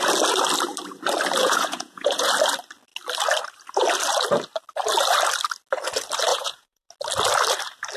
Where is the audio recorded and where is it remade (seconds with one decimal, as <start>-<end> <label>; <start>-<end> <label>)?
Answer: 0.0-1.4 recorded; 1.4-2.3 remade; 2.3-6.3 recorded; 6.3-6.9 remade; 6.9-8.0 recorded